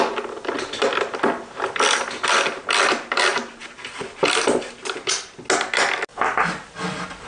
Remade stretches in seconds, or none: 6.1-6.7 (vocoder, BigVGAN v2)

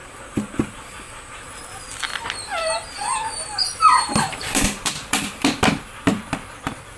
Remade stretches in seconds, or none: 4.2-7.0 (vocoder, BigVGAN v2)

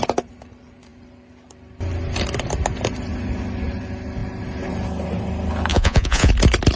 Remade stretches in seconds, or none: 5.7-6.3 (vocoder, Vocos)

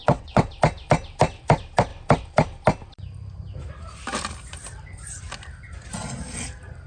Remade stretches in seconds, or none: 0.0-0.5 (vocoder, WaveNeXt)